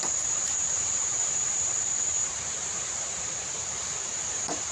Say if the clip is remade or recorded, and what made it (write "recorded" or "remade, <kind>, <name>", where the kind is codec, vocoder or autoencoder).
remade, vocoder, BigVGAN v2